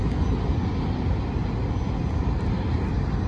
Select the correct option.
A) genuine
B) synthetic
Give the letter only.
A